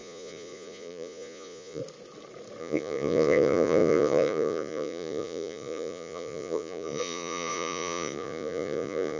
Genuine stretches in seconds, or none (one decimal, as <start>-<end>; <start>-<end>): 1.8-2.6